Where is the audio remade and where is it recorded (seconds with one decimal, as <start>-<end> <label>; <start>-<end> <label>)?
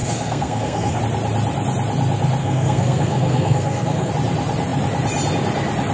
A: 0.0-1.0 remade; 1.0-2.4 recorded; 2.4-4.1 remade; 4.1-5.9 recorded